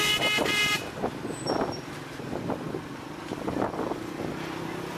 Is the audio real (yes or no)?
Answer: yes